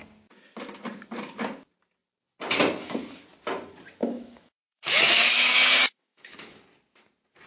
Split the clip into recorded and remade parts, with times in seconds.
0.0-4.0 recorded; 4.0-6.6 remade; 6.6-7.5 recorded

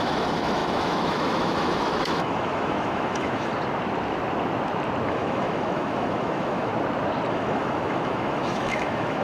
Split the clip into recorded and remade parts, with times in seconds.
0.0-3.5 remade; 3.5-5.1 recorded; 5.1-6.7 remade; 6.7-7.3 recorded; 7.3-9.2 remade

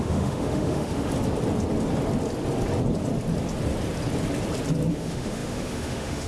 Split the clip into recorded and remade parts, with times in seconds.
0.0-1.1 remade; 1.1-4.9 recorded; 4.9-6.3 remade

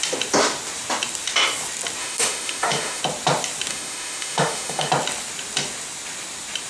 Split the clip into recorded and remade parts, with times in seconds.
0.0-2.0 recorded; 2.0-3.0 remade; 3.0-3.7 recorded; 3.7-4.9 remade; 4.9-6.7 recorded

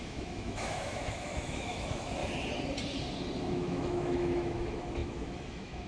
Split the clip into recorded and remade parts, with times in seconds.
0.0-2.2 remade; 2.2-3.4 recorded; 3.4-5.9 remade

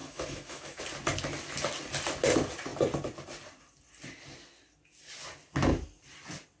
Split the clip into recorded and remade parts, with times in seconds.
0.0-0.8 remade; 0.8-6.6 recorded